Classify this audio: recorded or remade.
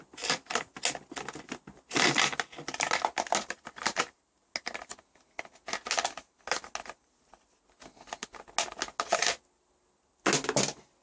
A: recorded